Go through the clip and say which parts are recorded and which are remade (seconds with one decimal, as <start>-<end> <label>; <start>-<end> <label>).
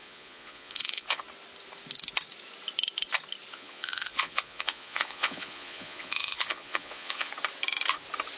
0.0-1.2 remade; 1.2-3.5 recorded; 3.5-7.3 remade; 7.3-8.4 recorded